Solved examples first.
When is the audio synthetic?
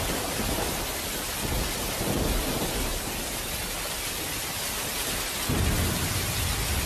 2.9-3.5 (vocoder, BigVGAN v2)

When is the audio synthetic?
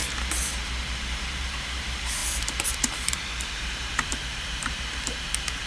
1.0-2.2 (vocoder, BigVGAN v2); 3.1-5.7